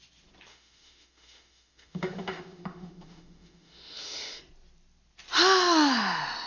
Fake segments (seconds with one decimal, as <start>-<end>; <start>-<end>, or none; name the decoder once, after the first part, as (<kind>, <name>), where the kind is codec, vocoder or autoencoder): 0.5-4.4 (autoencoder, DAC-VAE)